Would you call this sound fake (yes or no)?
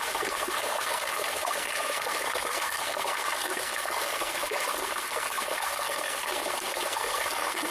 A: yes